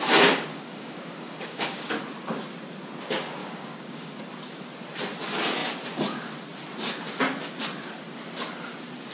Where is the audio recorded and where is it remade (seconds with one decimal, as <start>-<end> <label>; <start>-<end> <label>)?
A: 0.0-0.5 recorded; 0.5-2.0 remade; 2.0-3.4 recorded; 3.4-4.2 remade; 4.2-9.1 recorded